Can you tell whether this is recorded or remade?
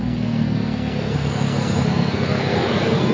remade